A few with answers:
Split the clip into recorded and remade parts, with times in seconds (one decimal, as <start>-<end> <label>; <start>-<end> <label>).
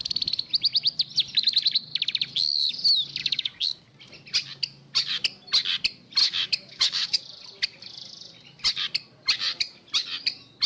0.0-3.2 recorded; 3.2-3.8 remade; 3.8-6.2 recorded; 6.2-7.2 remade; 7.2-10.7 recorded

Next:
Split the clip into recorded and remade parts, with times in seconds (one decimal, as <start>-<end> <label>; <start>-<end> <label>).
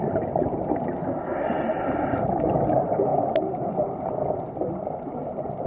0.0-1.3 remade; 1.3-2.0 recorded; 2.0-5.7 remade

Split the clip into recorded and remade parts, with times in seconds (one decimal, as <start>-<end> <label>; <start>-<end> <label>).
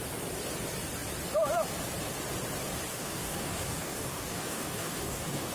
0.0-2.9 recorded; 2.9-5.5 remade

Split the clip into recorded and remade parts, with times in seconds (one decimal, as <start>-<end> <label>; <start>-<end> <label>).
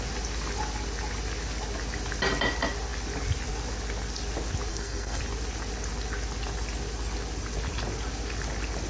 0.0-4.7 recorded; 4.7-5.2 remade; 5.2-8.9 recorded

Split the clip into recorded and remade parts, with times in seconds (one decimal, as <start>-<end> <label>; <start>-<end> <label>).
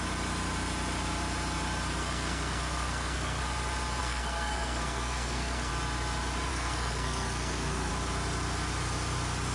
0.0-2.0 recorded; 2.0-3.4 remade; 3.4-4.0 recorded; 4.0-5.7 remade; 5.7-6.5 recorded; 6.5-7.9 remade; 7.9-9.5 recorded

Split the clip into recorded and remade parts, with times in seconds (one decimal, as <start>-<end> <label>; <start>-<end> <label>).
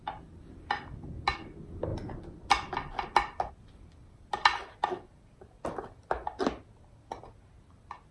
0.0-8.1 recorded